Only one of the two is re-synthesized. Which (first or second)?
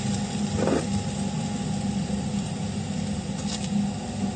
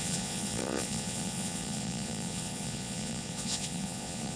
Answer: second